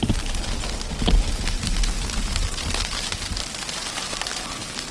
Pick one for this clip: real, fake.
real